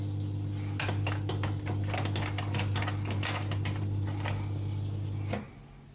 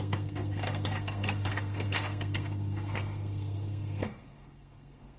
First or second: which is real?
first